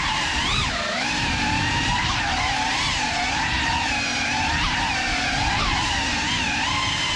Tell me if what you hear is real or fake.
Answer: fake